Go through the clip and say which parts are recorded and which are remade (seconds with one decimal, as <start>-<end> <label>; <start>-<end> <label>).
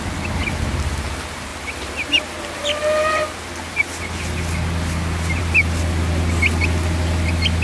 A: 0.0-7.6 recorded